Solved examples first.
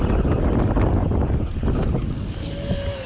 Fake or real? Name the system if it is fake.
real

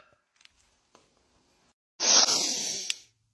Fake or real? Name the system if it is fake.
real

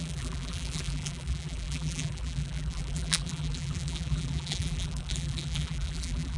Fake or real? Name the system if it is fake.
fake, vocoder, BigVGAN v2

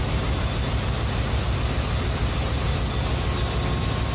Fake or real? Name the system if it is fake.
real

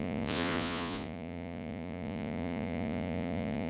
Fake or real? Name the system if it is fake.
fake, vocoder, Vocos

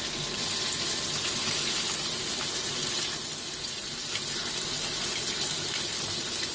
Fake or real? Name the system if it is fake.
real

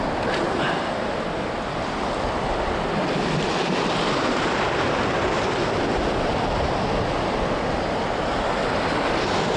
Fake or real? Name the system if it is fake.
real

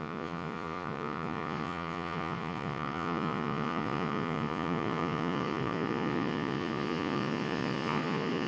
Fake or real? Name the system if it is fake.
fake, vocoder, Vocos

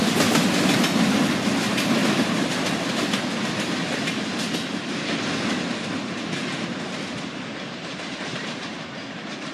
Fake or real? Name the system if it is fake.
real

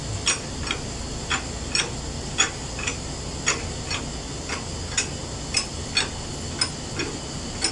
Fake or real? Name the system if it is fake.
real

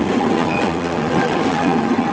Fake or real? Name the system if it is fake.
fake, vocoder, WaveNeXt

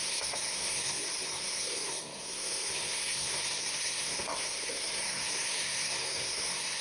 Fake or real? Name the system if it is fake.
fake, codec, SNAC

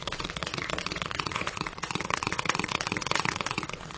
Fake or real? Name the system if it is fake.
fake, vocoder, WaveNeXt